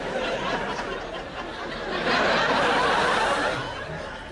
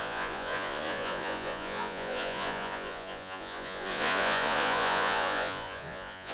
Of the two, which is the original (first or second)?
first